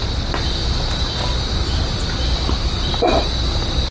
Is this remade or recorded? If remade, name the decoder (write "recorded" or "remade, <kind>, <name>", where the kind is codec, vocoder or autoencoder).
recorded